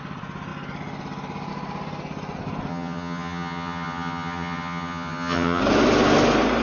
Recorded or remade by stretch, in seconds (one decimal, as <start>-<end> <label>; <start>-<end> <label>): 0.0-2.7 recorded; 2.7-5.6 remade; 5.6-6.6 recorded